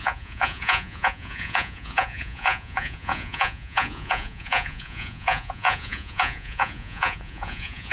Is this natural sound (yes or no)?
no